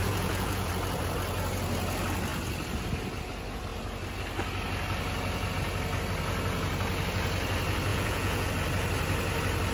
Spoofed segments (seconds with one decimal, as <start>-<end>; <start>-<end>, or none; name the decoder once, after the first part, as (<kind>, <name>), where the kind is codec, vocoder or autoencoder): 0.0-0.7 (vocoder, Vocos); 7.9-8.5